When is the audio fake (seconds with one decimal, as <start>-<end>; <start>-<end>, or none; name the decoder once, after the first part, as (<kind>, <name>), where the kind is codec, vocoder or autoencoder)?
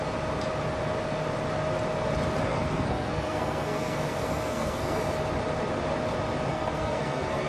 2.5-5.0 (codec, SNAC); 6.5-7.5